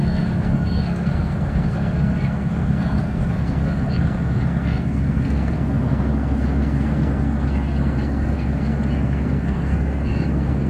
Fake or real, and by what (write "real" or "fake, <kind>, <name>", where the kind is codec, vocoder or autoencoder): fake, codec, SNAC